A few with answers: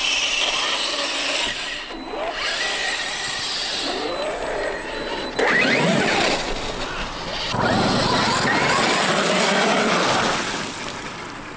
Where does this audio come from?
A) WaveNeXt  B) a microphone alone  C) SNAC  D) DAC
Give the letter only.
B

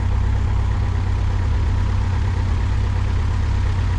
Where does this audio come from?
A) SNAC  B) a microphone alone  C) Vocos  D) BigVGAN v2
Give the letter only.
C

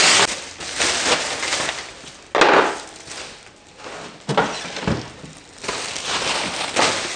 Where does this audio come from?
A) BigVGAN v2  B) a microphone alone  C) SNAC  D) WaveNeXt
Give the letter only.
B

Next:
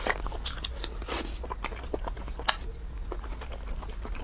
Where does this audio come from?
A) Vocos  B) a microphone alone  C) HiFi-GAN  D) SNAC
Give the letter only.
B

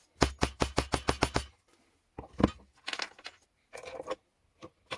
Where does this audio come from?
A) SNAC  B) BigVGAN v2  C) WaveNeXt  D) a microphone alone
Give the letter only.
D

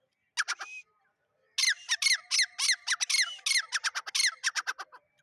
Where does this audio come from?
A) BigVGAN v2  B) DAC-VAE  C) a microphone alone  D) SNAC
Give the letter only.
C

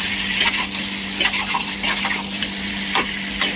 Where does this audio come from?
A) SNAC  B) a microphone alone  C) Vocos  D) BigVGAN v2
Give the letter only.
B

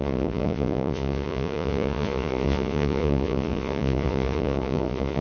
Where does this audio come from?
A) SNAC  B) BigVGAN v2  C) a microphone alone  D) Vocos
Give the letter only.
D